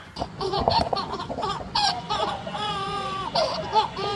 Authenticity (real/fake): fake